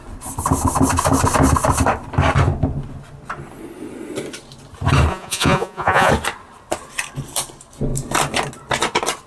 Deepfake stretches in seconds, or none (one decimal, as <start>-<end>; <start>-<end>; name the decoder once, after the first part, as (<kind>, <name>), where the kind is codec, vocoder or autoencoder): 5.1-6.1 (vocoder, Vocos)